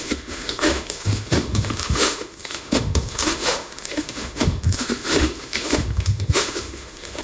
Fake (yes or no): yes